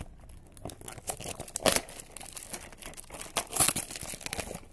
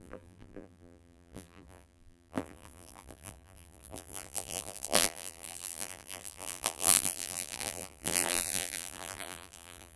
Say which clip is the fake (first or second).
second